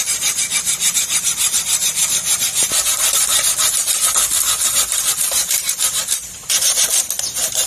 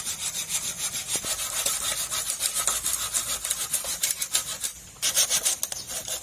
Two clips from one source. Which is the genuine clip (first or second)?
second